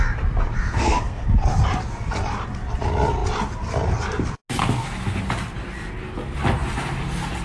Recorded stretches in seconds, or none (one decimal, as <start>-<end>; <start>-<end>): 0.0-0.6; 1.2-4.6; 5.2-7.4